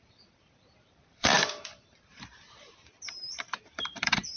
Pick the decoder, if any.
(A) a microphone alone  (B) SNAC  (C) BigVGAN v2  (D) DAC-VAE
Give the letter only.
C